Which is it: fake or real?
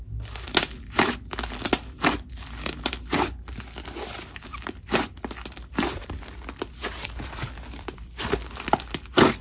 real